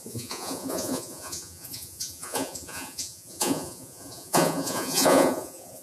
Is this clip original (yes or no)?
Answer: no